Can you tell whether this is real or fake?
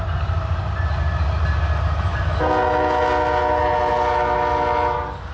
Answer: real